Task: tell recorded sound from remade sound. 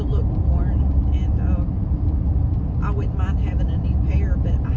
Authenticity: recorded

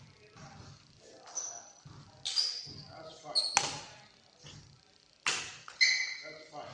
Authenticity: recorded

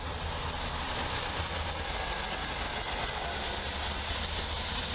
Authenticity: recorded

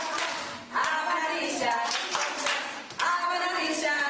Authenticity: recorded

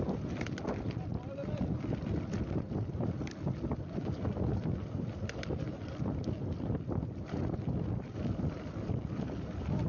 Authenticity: recorded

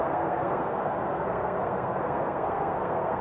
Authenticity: remade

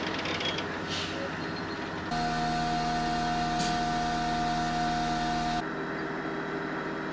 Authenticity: recorded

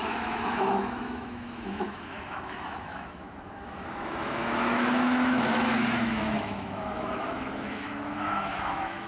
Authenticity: remade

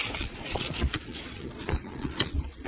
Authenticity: remade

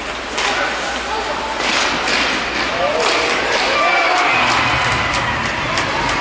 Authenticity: recorded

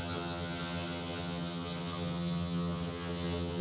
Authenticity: remade